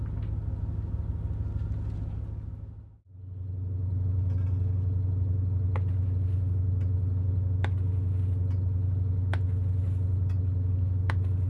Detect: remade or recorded recorded